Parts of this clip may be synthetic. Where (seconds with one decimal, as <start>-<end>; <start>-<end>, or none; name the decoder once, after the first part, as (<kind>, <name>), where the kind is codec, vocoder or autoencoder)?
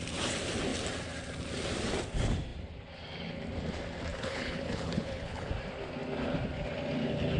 4.1-5.5 (codec, HILCodec)